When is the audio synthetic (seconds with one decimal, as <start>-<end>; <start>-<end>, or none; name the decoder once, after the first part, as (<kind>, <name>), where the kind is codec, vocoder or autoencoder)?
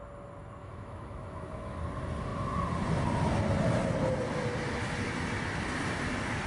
0.6-1.8 (autoencoder, DAC-VAE)